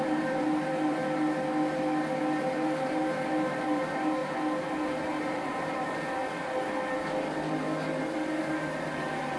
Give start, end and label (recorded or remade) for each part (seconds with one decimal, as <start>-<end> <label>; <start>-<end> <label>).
0.0-1.0 remade; 1.0-2.4 recorded; 2.4-4.2 remade; 4.2-5.2 recorded; 5.2-6.2 remade; 6.2-8.4 recorded; 8.4-9.4 remade

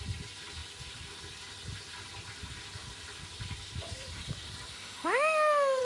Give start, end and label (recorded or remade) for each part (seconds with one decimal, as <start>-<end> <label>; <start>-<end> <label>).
0.0-4.7 recorded; 4.7-5.8 remade

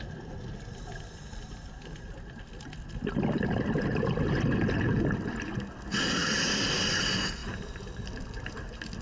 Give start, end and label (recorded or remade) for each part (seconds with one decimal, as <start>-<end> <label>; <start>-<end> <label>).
0.0-6.2 recorded; 6.2-7.0 remade; 7.0-7.4 recorded; 7.4-9.0 remade

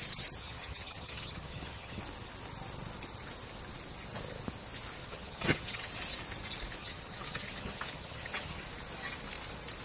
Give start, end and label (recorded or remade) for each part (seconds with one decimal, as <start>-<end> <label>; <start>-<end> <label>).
0.0-0.4 recorded; 0.4-2.0 remade; 2.0-5.0 recorded; 5.0-5.9 remade; 5.9-6.8 recorded; 6.8-8.6 remade; 8.6-9.8 recorded